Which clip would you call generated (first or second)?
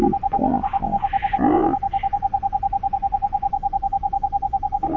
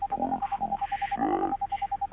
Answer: first